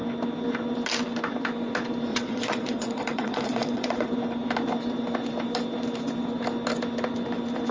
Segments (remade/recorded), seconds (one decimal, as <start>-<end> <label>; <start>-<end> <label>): 0.0-2.1 recorded; 2.1-4.1 remade; 4.1-7.7 recorded